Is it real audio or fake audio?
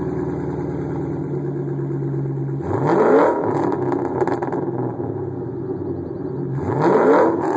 real